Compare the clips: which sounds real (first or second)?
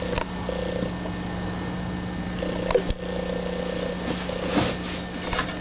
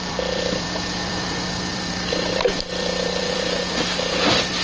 first